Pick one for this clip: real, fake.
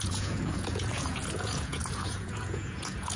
fake